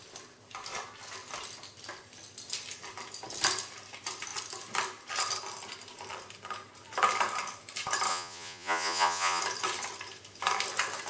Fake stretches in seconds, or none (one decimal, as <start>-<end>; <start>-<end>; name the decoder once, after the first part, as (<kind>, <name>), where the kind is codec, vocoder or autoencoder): 8.1-9.4 (vocoder, Vocos)

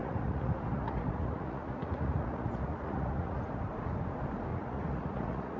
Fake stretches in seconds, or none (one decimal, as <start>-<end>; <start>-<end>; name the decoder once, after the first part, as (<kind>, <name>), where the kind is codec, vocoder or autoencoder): 0.0-3.4 (vocoder, Vocos); 4.5-5.6

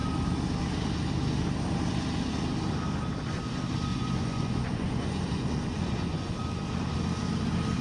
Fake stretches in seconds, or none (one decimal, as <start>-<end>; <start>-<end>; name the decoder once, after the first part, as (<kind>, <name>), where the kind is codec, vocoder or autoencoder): 3.9-6.3 (vocoder, Vocos)

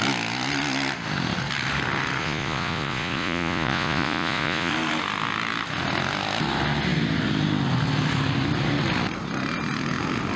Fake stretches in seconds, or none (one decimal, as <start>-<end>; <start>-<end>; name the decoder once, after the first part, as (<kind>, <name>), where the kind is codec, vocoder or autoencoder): 2.2-4.7 (vocoder, Vocos)

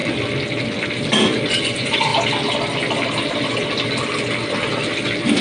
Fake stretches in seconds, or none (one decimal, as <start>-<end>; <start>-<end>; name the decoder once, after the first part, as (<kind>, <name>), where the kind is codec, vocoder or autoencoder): 1.6-2.1 (vocoder, Vocos)